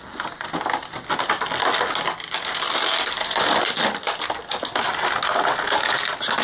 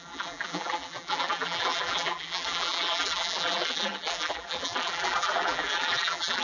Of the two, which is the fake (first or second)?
second